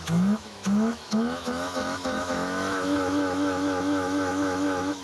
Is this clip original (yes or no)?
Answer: no